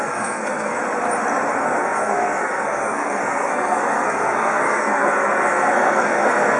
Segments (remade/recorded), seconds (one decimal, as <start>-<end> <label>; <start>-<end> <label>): 0.0-0.8 remade; 0.8-1.5 recorded; 1.5-6.6 remade